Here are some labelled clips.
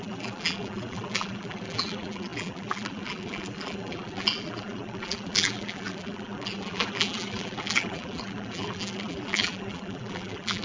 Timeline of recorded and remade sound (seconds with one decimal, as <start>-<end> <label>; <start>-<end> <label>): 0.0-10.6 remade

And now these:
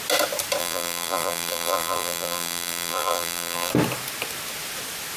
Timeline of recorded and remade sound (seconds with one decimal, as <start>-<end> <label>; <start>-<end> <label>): 0.0-0.6 recorded; 0.6-3.7 remade; 3.7-5.2 recorded

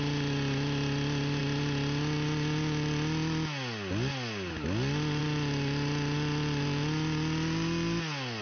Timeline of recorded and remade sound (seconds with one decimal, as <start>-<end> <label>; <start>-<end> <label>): 0.0-8.4 recorded